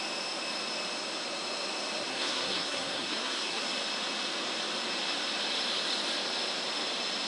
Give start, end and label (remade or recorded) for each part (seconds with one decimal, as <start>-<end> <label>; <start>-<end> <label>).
0.0-2.1 recorded; 2.1-3.6 remade; 3.6-7.3 recorded